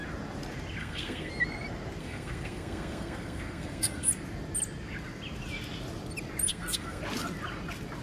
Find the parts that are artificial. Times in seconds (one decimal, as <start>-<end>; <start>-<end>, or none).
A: 0.8-1.3; 2.0-4.1; 6.5-7.0